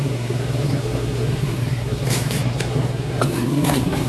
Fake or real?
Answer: fake